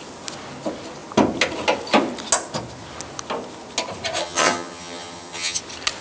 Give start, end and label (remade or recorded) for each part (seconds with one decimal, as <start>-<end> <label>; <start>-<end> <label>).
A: 0.0-4.2 recorded; 4.2-5.6 remade; 5.6-6.0 recorded